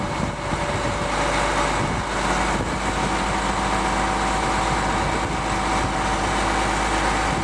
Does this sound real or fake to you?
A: real